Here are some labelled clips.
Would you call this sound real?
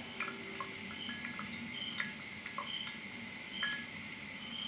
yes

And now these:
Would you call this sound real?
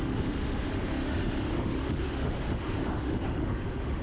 no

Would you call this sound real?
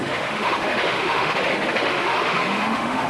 no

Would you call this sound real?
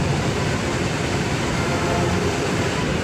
no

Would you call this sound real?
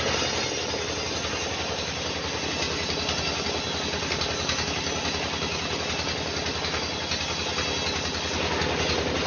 yes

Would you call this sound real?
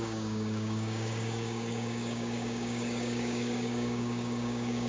no